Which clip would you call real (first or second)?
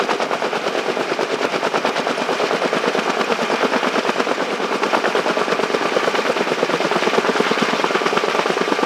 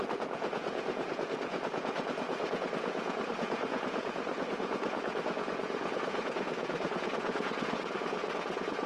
first